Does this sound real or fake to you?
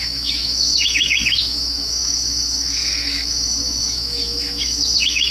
fake